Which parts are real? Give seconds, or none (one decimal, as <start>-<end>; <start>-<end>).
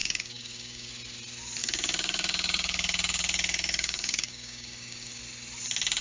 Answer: 0.9-1.6; 5.2-6.0